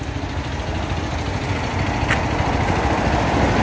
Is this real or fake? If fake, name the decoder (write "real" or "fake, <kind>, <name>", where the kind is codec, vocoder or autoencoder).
real